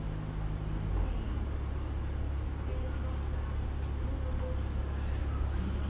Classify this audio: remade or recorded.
recorded